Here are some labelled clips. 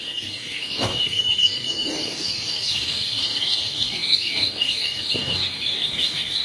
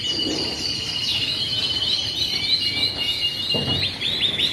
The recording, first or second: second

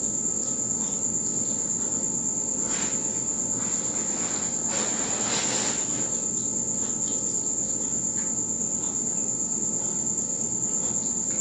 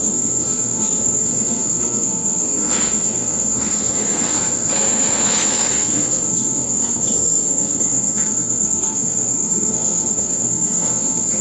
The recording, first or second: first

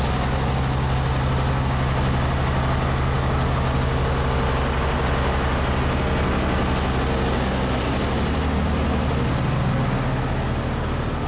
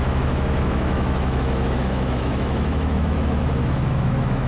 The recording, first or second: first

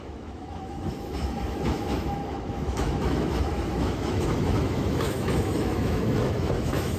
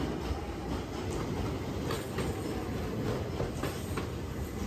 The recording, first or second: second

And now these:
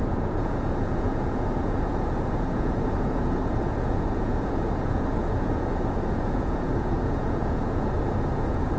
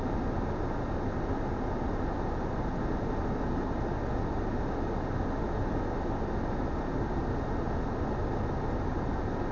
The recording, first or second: second